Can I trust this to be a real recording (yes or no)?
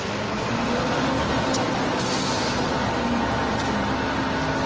yes